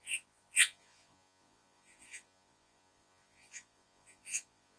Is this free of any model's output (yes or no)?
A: no